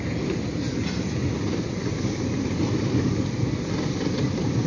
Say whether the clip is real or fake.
real